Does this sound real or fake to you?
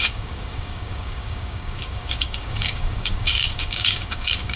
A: fake